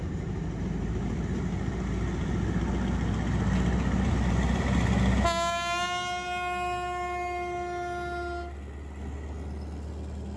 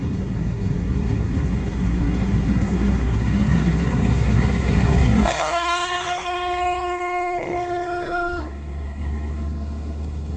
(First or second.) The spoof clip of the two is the second